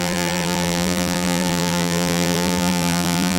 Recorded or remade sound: remade